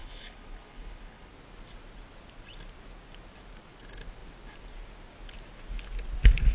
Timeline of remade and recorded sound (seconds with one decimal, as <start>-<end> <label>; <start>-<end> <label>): 0.0-1.3 remade; 1.3-6.5 recorded